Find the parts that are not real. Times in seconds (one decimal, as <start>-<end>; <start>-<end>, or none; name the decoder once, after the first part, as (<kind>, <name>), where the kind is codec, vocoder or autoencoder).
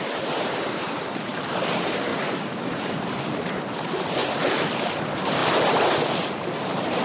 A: 0.0-2.1 (vocoder, BigVGAN v2); 3.4-5.4; 6.6-7.0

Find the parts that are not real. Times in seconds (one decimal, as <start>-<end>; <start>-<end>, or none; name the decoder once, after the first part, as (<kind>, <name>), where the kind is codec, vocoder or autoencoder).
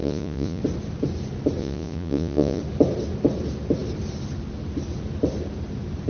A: 0.0-0.6 (vocoder, Vocos); 1.6-2.6